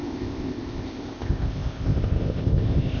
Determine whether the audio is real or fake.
fake